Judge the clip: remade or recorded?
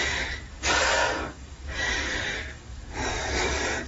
remade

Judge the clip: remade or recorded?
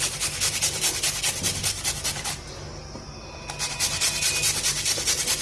recorded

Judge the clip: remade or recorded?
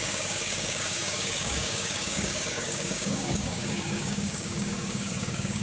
remade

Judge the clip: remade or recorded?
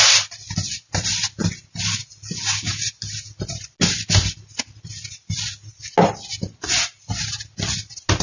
recorded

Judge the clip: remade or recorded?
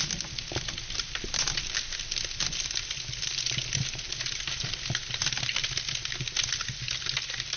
recorded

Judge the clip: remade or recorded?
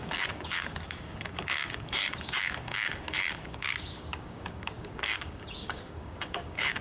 remade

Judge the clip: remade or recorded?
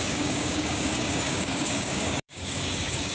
remade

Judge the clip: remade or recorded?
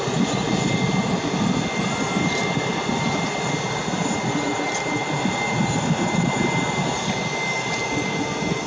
recorded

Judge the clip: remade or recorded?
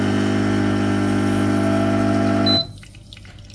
recorded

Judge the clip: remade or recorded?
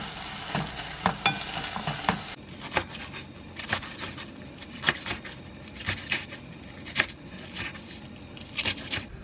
recorded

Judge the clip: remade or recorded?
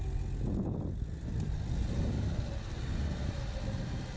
recorded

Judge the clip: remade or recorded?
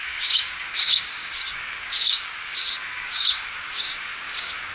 remade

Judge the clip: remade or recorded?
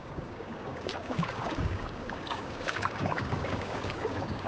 remade